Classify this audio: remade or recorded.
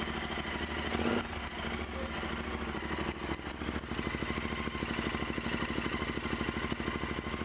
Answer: recorded